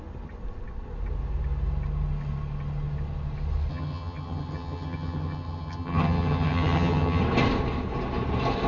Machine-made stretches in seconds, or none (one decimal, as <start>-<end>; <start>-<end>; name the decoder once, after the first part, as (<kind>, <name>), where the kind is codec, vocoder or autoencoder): 3.7-7.2 (vocoder, HiFi-GAN)